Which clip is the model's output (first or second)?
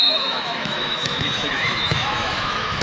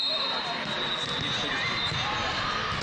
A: first